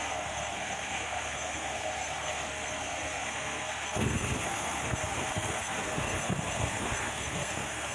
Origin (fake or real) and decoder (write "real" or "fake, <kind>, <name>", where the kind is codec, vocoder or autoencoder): fake, codec, SNAC